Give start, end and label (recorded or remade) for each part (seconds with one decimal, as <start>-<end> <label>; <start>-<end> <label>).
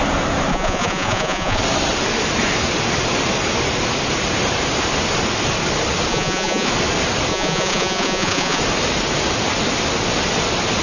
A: 0.0-0.5 recorded; 0.5-1.6 remade; 1.6-6.1 recorded; 6.1-6.7 remade; 6.7-7.3 recorded; 7.3-8.6 remade; 8.6-10.8 recorded